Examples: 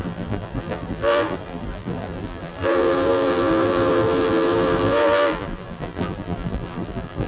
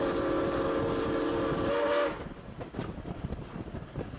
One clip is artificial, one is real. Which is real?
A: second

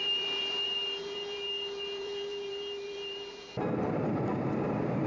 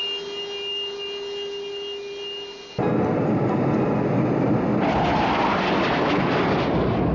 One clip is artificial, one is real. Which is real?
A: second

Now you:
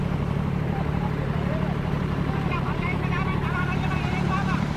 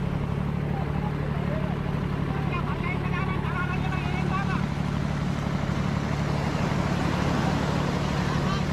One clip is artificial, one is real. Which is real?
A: second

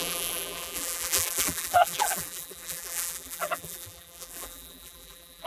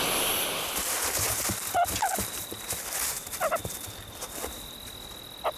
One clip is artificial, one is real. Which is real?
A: second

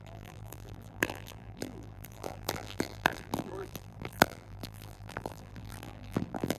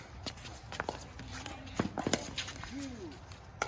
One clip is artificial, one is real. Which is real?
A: second